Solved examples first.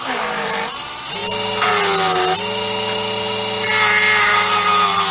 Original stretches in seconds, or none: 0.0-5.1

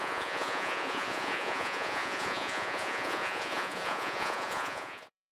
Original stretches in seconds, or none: none

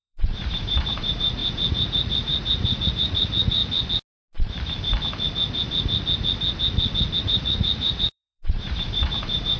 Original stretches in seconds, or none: 3.6-7.2

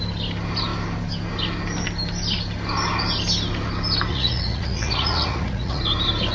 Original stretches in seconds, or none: 0.0-4.1; 5.8-6.3

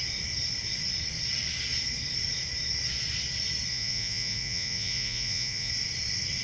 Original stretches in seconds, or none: 0.0-3.7; 5.7-6.4

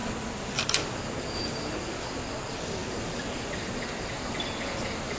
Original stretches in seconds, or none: 0.0-5.2

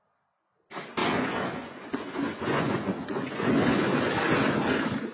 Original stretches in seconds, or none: 0.0-1.0; 4.1-5.1

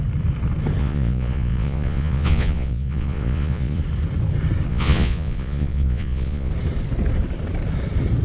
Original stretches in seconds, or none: 0.0-0.8; 3.8-4.7; 6.5-8.2